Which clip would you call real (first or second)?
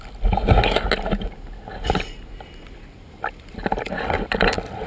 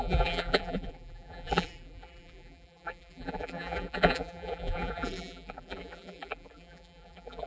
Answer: first